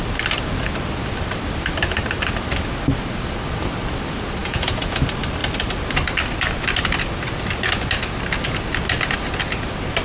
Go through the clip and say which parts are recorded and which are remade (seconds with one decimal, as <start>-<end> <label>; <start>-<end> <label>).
0.0-4.4 recorded; 4.4-5.0 remade; 5.0-10.0 recorded